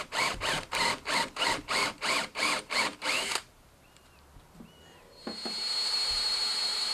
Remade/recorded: remade